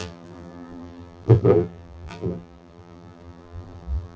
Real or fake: fake